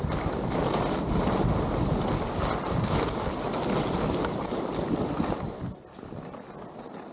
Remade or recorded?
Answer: recorded